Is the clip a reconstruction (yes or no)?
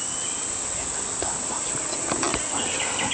no